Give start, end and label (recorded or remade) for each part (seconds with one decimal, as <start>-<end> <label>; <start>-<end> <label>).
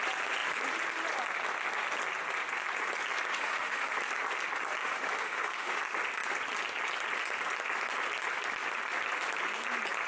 0.0-3.3 recorded; 3.3-3.9 remade; 3.9-4.8 recorded; 4.8-5.8 remade; 5.8-10.1 recorded